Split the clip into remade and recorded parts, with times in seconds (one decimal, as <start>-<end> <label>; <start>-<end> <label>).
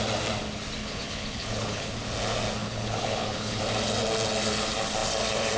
0.0-0.8 recorded; 0.8-1.9 remade; 1.9-2.6 recorded; 2.6-3.6 remade; 3.6-5.6 recorded